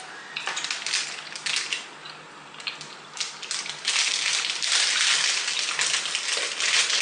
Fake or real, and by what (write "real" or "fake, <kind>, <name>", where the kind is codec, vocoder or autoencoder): real